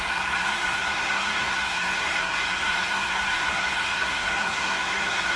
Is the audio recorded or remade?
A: remade